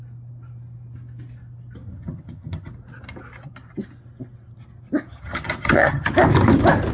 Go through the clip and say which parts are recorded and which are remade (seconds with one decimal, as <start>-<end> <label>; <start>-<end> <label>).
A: 0.0-1.9 recorded; 1.9-2.7 remade; 2.7-5.1 recorded; 5.1-6.1 remade; 6.1-6.9 recorded